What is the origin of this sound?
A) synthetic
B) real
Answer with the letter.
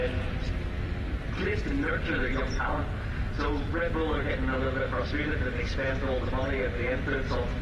B